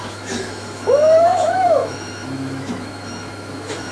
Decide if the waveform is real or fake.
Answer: fake